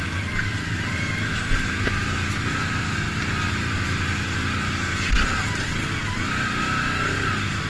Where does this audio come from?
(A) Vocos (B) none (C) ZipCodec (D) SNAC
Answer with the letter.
B